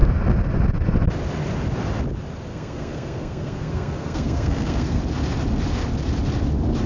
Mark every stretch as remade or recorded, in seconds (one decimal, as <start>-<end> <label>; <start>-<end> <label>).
0.0-2.5 recorded; 2.5-5.0 remade; 5.0-6.9 recorded